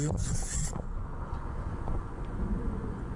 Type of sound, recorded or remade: remade